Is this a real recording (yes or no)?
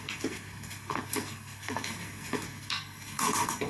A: no